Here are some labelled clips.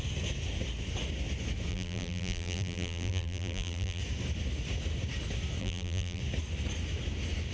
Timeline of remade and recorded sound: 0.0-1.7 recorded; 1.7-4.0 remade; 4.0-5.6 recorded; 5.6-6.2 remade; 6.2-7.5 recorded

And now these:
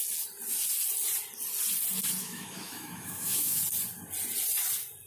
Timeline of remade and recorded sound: 0.0-2.2 recorded; 2.2-3.6 remade; 3.6-5.1 recorded

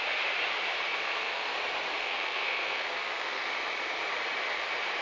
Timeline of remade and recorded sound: 0.0-0.9 recorded; 0.9-1.5 remade; 1.5-2.0 recorded; 2.0-3.5 remade; 3.5-5.0 recorded

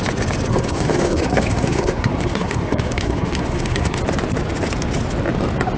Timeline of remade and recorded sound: 0.0-0.5 recorded; 0.5-4.0 remade; 4.0-5.8 recorded